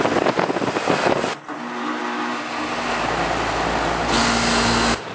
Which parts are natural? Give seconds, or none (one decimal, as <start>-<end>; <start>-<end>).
0.0-5.1